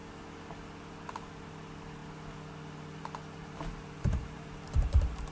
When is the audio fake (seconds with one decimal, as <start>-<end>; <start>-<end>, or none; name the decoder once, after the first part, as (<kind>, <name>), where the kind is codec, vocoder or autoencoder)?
3.4-5.3 (vocoder, BigVGAN v2)

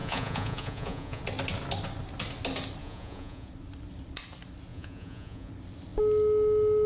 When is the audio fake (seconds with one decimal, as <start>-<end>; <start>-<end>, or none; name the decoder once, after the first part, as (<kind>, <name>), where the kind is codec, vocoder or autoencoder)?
0.0-1.2 (vocoder, Vocos); 2.8-3.5; 4.7-5.5

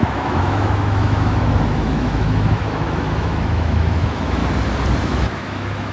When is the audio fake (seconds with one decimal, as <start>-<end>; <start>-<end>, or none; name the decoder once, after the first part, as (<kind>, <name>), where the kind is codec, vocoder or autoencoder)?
0.0-4.4 (autoencoder, DAC-VAE); 5.0-5.9

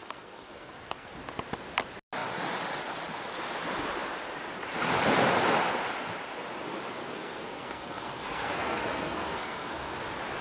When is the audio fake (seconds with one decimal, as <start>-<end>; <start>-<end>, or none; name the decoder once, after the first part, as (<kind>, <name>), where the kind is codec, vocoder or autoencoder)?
0.0-1.1 (codec, SNAC); 7.0-10.0

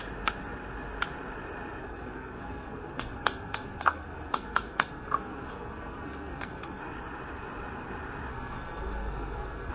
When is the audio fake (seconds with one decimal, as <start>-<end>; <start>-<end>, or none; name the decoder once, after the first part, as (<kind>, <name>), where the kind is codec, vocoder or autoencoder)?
1.8-6.8 (codec, SNAC); 8.3-9.7

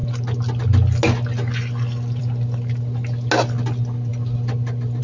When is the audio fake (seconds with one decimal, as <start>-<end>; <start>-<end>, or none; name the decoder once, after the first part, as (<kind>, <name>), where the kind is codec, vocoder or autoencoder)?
none